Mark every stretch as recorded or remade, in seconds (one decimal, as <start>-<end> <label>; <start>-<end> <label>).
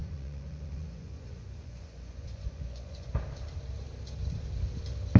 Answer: 0.0-3.1 remade; 3.1-5.2 recorded